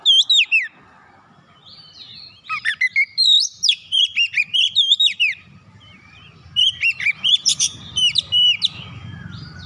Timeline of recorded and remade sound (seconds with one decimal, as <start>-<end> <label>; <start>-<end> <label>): 0.0-3.5 recorded; 3.5-8.0 remade; 8.0-9.7 recorded